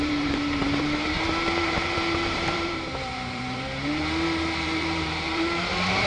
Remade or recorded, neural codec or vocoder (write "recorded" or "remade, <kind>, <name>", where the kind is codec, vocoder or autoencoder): remade, vocoder, BigVGAN v2